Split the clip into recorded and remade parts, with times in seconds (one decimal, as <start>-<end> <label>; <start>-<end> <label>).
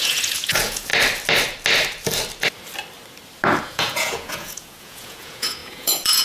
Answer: 0.0-0.9 remade; 0.9-3.6 recorded; 3.6-6.2 remade